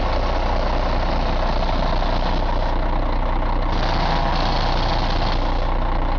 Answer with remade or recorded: recorded